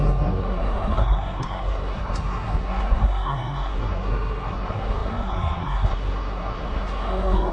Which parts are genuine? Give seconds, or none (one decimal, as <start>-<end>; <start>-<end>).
none